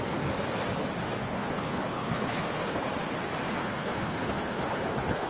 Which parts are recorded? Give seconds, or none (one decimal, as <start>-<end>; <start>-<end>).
0.0-1.2; 2.9-3.6